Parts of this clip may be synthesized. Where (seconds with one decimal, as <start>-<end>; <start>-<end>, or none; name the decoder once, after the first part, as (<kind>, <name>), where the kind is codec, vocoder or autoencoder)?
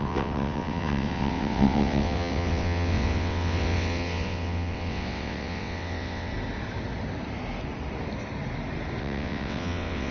0.0-6.3 (vocoder, WaveNeXt); 9.0-10.1